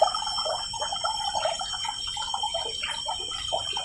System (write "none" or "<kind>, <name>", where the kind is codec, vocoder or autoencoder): none